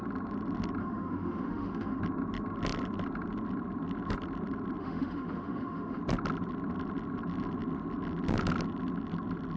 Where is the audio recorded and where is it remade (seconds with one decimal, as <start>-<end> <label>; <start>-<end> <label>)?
0.0-0.8 recorded; 0.8-2.0 remade; 2.0-4.8 recorded; 4.8-6.0 remade; 6.0-9.6 recorded